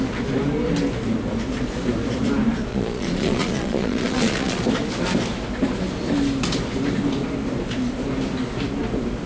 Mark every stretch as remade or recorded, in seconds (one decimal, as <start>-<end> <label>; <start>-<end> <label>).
0.0-2.7 recorded; 2.7-4.6 remade; 4.6-9.3 recorded